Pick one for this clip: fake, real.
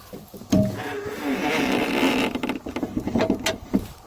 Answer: real